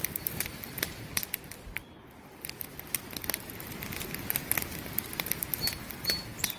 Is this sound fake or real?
real